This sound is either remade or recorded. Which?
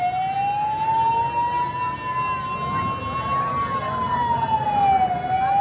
recorded